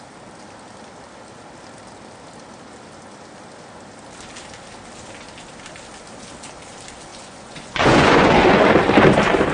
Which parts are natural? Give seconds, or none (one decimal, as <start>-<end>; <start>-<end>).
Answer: 0.0-7.1; 8.7-9.5